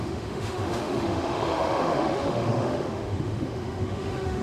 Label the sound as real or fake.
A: fake